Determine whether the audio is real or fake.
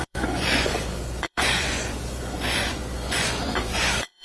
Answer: fake